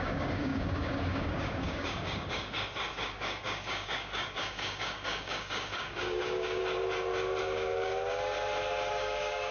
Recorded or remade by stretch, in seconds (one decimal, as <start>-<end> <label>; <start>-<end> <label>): 0.0-6.6 remade; 6.6-7.4 recorded; 7.4-7.9 remade; 7.9-8.9 recorded; 8.9-9.5 remade